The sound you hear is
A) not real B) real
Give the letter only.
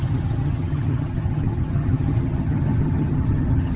A